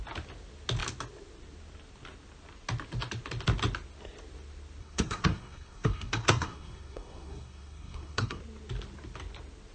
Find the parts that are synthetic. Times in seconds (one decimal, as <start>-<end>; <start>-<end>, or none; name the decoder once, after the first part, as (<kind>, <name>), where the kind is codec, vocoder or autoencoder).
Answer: 4.8-8.4 (codec, SNAC)